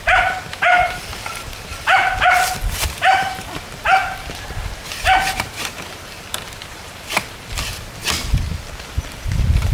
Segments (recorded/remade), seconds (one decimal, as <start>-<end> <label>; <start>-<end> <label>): 0.0-8.0 remade; 8.0-8.9 recorded; 8.9-9.7 remade